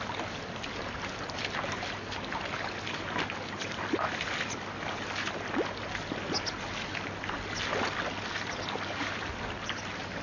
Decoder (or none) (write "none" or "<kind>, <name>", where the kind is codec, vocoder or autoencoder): none